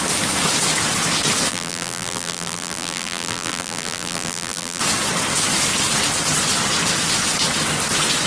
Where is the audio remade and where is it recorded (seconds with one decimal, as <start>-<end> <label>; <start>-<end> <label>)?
0.0-1.5 recorded; 1.5-4.8 remade; 4.8-8.3 recorded